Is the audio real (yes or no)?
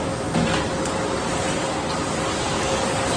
yes